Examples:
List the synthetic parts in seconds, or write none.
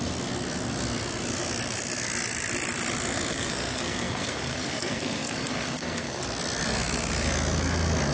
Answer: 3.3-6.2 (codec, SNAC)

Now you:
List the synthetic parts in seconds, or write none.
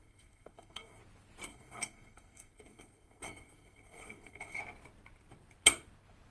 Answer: 0.0-1.0 (codec, SNAC); 1.5-4.6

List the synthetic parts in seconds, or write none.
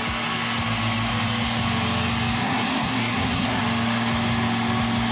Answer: 2.4-3.6 (codec, SNAC)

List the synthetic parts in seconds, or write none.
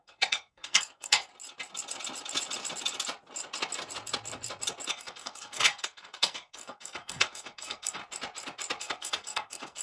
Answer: 0.0-1.3 (codec, SNAC); 4.9-8.0; 8.8-9.8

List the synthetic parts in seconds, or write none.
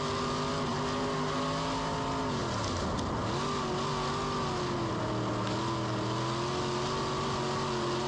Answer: none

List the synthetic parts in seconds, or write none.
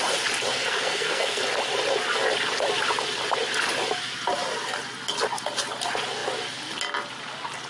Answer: 0.5-1.4 (codec, SNAC)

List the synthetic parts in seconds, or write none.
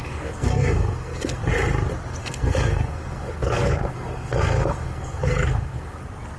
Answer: 0.0-1.4 (codec, SNAC); 2.2-6.0